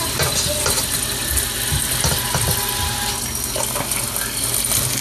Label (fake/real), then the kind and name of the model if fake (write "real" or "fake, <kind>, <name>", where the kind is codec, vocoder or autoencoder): real